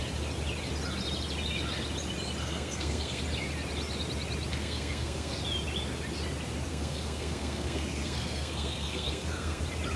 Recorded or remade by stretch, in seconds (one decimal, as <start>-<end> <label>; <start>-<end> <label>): 0.0-2.4 recorded; 2.4-3.2 remade; 3.2-4.5 recorded; 4.5-5.4 remade; 5.4-6.7 recorded; 6.7-9.6 remade; 9.6-10.0 recorded